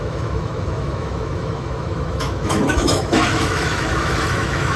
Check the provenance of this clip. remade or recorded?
remade